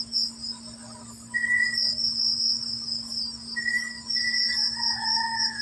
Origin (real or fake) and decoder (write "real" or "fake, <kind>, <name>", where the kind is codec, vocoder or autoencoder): real